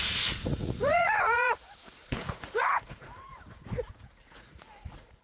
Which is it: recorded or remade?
remade